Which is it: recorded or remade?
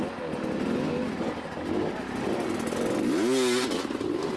recorded